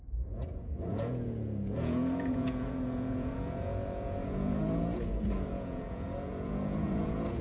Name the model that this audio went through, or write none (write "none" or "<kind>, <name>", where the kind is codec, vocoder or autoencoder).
vocoder, Vocos